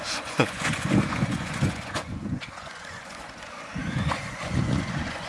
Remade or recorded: remade